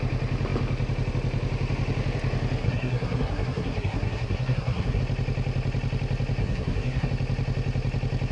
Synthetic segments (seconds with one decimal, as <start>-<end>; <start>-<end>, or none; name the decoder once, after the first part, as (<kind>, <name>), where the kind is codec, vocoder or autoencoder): 2.6-5.0 (codec, SNAC); 6.4-7.1